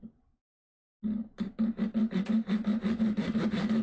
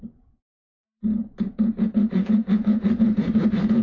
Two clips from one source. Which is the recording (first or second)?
first